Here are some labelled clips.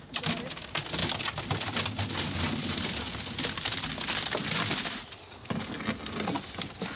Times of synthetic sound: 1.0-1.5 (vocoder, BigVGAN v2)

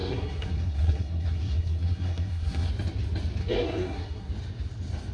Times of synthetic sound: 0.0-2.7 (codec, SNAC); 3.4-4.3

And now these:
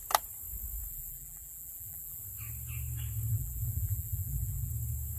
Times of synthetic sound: 0.9-2.2 (vocoder, BigVGAN v2); 3.3-4.7